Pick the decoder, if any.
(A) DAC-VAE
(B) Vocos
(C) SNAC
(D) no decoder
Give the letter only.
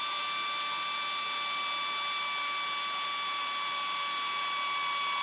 D